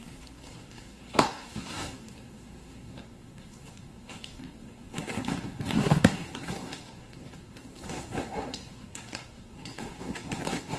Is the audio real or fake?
fake